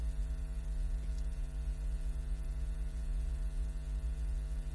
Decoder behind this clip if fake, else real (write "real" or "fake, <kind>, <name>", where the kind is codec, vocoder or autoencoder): fake, vocoder, Vocos